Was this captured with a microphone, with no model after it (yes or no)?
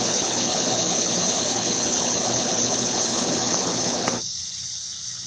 no